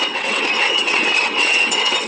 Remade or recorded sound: remade